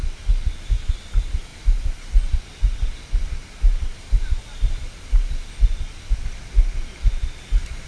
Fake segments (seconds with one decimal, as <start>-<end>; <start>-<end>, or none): none